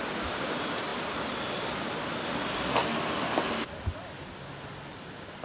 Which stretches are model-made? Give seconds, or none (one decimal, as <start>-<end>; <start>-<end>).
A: none